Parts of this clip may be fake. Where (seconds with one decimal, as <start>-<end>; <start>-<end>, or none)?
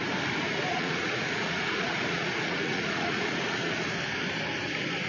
0.7-3.8